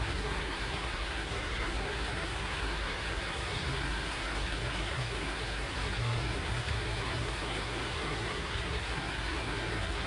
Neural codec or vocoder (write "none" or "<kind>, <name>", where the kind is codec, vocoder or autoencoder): codec, SNAC